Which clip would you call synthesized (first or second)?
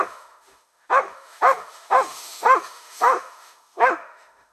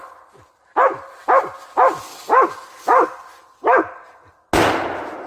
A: first